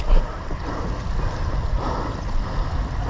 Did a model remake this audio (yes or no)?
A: no